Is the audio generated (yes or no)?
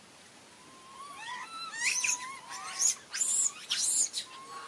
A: no